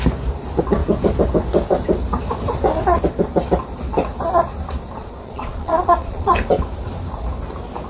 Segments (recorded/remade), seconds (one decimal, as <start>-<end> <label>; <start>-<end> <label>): 0.0-5.0 recorded; 5.0-6.3 remade; 6.3-7.9 recorded